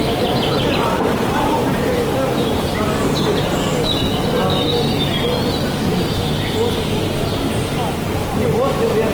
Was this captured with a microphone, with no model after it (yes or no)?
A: yes